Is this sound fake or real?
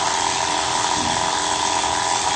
real